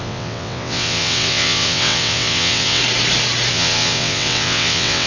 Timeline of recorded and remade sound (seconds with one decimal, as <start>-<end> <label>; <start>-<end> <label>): 0.0-2.8 remade; 2.8-3.5 recorded; 3.5-5.1 remade